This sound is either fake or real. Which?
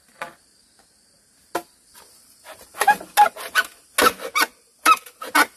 real